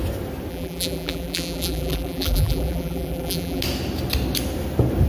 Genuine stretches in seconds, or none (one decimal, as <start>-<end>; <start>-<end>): 0.0-0.5; 3.6-5.1